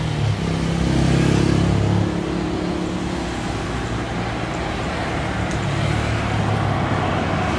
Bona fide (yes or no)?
yes